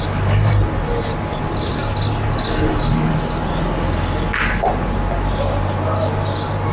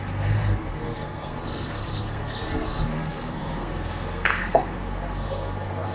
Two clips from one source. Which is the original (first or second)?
first